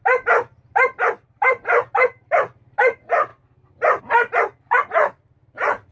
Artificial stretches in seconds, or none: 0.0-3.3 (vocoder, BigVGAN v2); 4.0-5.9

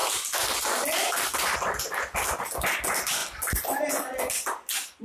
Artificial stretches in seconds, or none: none

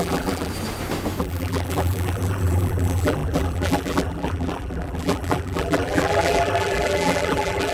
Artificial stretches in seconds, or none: 0.0-0.5 (vocoder, BigVGAN v2); 1.2-7.7

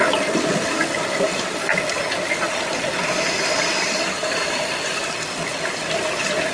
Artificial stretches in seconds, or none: 0.0-1.0 (vocoder, BigVGAN v2); 4.9-6.5

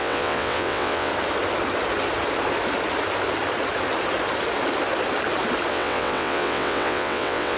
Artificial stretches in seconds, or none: 0.0-1.1 (vocoder, WaveNeXt); 5.7-7.6

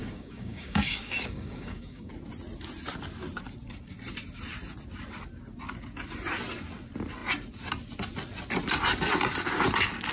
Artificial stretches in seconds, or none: 0.0-2.1 (codec, DAC)

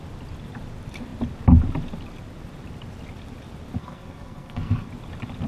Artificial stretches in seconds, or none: 3.8-4.9 (codec, SNAC)

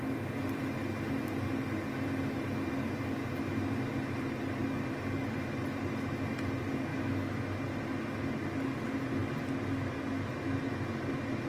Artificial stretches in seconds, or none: 6.9-7.4 (autoencoder, DAC-VAE)